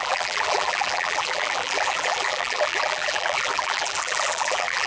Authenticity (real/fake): fake